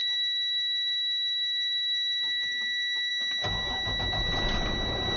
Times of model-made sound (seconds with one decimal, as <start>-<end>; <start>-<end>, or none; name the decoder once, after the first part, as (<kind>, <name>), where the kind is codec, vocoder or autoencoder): 0.0-3.1 (autoencoder, DAC-VAE)